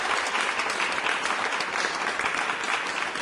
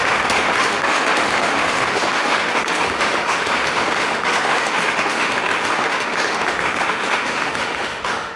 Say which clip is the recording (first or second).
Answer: first